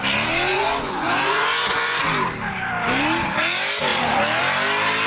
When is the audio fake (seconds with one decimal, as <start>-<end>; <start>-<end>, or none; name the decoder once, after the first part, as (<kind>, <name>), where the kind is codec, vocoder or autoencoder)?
0.5-2.0 (vocoder, Vocos)